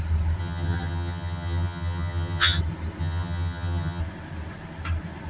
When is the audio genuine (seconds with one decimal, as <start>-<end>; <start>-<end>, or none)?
0.0-0.4; 2.6-3.0; 4.0-5.3